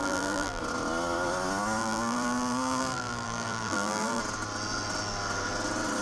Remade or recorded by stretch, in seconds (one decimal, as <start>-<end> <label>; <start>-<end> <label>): 0.0-0.6 remade; 0.6-1.8 recorded; 1.8-4.2 remade; 4.2-6.0 recorded